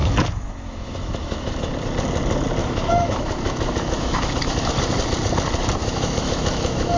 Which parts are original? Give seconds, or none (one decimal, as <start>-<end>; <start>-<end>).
1.7-2.6; 4.7-5.8